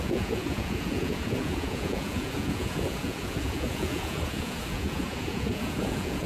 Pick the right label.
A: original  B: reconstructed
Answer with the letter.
B